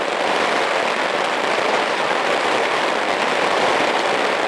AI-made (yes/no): yes